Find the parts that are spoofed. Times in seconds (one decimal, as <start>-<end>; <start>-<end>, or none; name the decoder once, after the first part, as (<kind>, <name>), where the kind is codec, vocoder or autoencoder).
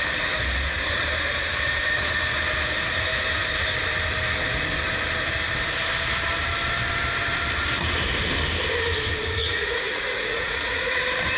9.4-11.0 (vocoder, Vocos)